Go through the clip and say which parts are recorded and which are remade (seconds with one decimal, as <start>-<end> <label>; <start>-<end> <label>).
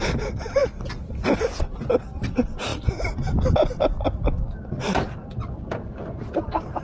0.0-6.8 recorded